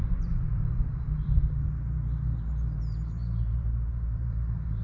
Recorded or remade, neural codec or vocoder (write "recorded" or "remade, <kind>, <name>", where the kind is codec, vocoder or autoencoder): remade, vocoder, BigVGAN v2